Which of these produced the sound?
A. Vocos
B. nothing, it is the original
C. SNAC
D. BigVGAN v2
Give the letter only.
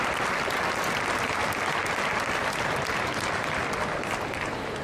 B